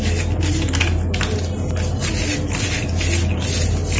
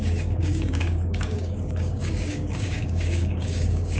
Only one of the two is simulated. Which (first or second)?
second